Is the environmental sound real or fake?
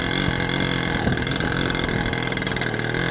real